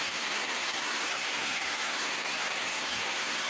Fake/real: fake